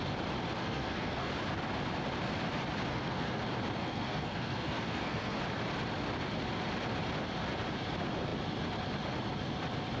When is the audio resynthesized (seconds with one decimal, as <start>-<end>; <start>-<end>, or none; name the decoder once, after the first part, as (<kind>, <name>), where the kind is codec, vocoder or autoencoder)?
0.6-1.3 (codec, SNAC); 2.9-3.4; 3.8-5.4